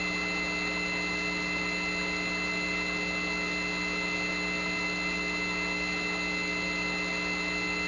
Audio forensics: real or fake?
real